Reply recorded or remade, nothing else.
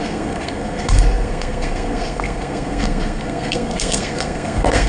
remade